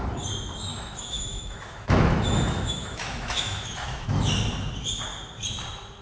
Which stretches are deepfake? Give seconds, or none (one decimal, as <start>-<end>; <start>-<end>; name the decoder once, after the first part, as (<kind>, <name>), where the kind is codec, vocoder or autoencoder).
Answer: 0.7-4.3 (autoencoder, DAC-VAE)